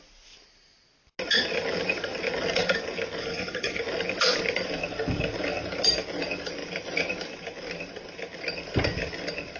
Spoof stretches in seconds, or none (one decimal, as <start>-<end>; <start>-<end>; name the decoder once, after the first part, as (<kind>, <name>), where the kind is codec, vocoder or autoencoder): 3.2-3.8 (codec, HILCodec)